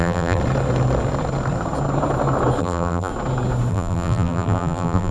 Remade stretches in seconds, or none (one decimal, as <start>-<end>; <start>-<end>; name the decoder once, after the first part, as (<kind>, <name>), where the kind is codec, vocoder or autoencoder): 0.0-0.4 (vocoder, BigVGAN v2); 2.6-3.1; 3.7-5.1